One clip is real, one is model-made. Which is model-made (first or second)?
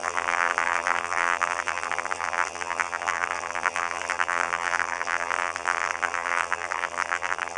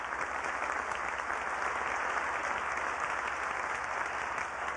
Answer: first